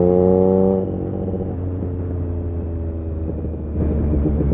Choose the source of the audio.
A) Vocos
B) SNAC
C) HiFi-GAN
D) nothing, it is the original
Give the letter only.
D